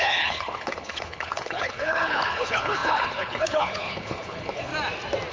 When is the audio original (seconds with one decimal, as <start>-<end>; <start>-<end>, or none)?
4.7-5.3